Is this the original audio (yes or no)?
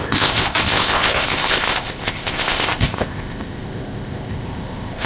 no